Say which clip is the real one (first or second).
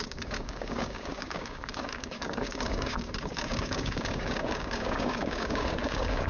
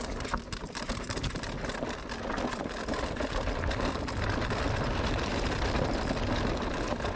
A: second